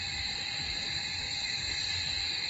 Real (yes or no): no